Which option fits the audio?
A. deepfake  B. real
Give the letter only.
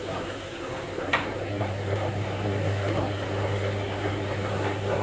A